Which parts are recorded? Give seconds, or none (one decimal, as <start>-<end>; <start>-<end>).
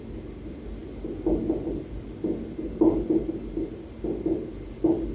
0.0-5.1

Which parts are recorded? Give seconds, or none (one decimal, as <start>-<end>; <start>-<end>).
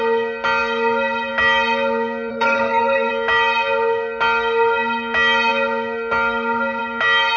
0.0-2.3; 3.1-7.4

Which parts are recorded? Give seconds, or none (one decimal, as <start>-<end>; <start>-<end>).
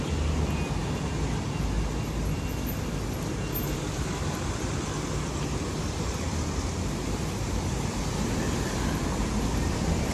0.0-10.1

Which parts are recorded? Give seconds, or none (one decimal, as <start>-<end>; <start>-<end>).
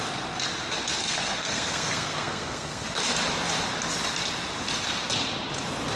0.0-1.0; 3.0-6.0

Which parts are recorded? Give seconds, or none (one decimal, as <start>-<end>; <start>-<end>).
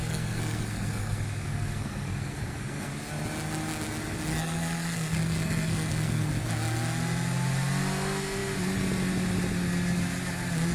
2.9-4.3; 6.3-10.7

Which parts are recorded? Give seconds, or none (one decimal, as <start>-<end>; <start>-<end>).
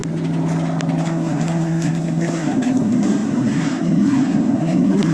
0.0-1.0